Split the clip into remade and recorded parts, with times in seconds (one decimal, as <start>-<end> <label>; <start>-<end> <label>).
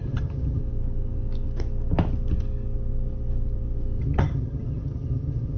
0.0-0.6 remade; 0.6-4.0 recorded; 4.0-5.6 remade